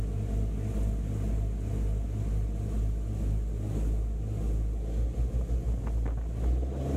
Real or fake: real